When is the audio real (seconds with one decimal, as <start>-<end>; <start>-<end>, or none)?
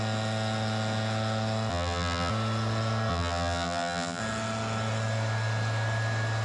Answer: 0.0-1.7; 2.3-3.1; 4.2-6.4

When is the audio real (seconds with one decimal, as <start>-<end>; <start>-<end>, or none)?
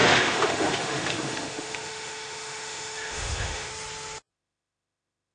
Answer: 3.7-4.3